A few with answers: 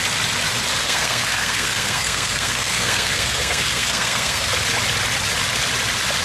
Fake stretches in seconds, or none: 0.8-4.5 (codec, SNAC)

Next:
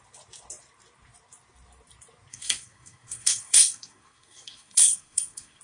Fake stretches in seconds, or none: 2.3-5.6 (codec, SNAC)

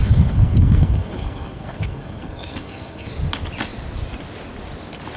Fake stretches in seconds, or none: 0.0-3.1 (codec, SNAC)

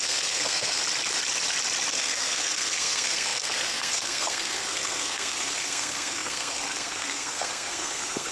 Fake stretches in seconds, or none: 0.0-0.8 (codec, SNAC); 1.9-8.3